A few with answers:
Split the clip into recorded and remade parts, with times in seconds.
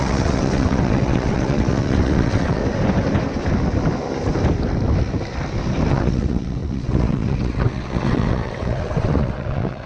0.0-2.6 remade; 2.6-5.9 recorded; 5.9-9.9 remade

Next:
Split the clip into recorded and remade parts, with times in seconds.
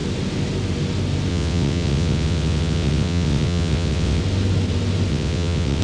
0.0-1.3 recorded; 1.3-4.2 remade; 4.2-5.1 recorded; 5.1-5.8 remade